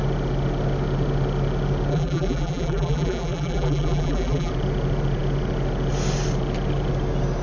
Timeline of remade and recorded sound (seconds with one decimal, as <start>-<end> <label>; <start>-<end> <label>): 0.0-1.9 recorded; 1.9-4.5 remade; 4.5-7.4 recorded